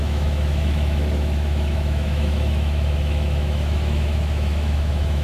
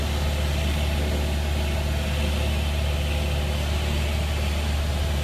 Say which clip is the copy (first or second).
first